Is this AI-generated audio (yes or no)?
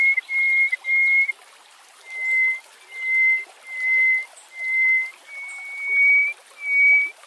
no